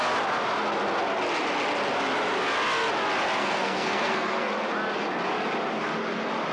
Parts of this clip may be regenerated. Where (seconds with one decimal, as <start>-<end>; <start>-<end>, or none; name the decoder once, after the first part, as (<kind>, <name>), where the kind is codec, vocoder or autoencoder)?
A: 3.4-4.5 (codec, SNAC)